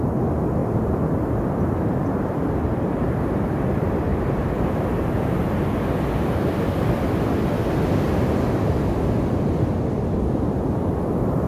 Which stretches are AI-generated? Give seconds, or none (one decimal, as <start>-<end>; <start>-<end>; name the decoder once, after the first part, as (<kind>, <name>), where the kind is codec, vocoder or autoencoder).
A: 4.1-6.8 (vocoder, BigVGAN v2)